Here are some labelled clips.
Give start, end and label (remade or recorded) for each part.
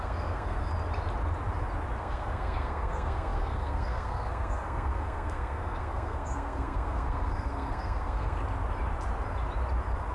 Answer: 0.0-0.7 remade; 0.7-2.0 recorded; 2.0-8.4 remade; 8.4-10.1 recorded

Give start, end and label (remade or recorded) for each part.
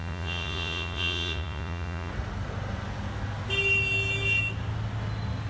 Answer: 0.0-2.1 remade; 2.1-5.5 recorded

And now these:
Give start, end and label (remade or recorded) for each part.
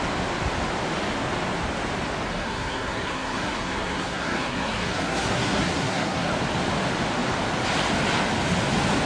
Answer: 0.0-2.3 recorded; 2.3-6.3 remade; 6.3-9.1 recorded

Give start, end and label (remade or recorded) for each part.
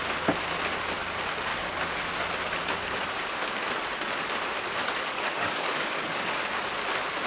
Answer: 0.0-1.5 recorded; 1.5-2.0 remade; 2.0-4.8 recorded; 4.8-6.3 remade; 6.3-7.3 recorded